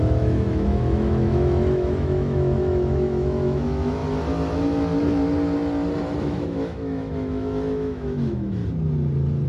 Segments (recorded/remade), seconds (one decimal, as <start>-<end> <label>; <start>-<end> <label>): 0.0-4.0 remade; 4.0-6.2 recorded; 6.2-8.6 remade; 8.6-9.5 recorded